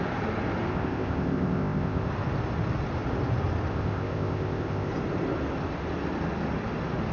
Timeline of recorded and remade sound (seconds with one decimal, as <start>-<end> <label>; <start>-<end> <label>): 0.0-0.7 recorded; 0.7-2.1 remade; 2.1-3.7 recorded; 3.7-4.9 remade; 4.9-7.1 recorded